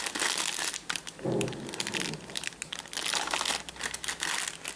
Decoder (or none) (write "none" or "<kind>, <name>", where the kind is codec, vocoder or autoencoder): none